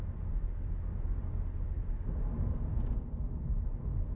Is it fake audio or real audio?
real